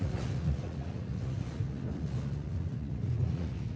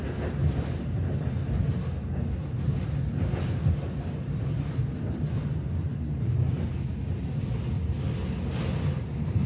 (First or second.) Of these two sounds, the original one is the second